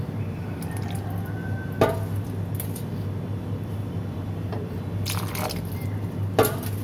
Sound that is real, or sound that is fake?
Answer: real